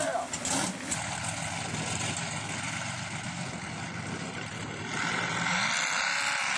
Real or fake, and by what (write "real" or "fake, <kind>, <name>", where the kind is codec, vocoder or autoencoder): real